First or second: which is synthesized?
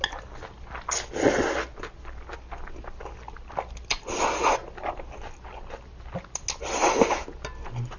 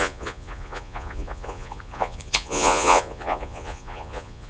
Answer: second